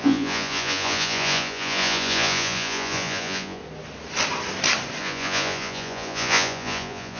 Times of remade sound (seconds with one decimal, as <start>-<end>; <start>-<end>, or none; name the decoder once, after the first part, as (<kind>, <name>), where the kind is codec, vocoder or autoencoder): 0.0-3.6 (vocoder, Vocos); 5.0-7.2